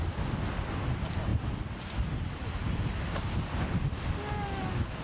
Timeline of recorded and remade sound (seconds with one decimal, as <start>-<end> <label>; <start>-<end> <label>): 0.0-5.0 recorded